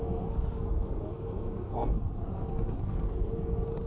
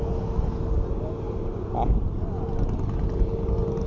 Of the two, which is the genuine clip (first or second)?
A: second